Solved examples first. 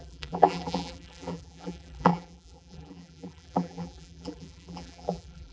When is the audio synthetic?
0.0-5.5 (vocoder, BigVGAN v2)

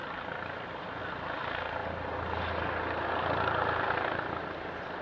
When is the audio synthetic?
none

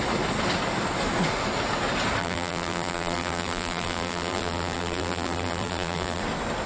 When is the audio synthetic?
2.2-6.2 (vocoder, BigVGAN v2)

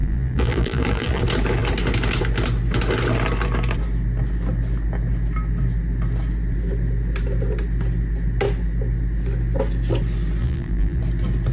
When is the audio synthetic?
0.0-1.2 (vocoder, BigVGAN v2); 10.4-11.0

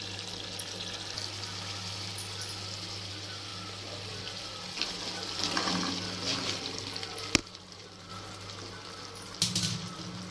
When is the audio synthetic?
7.4-8.1 (vocoder, BigVGAN v2)